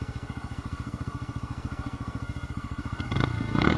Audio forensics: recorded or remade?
remade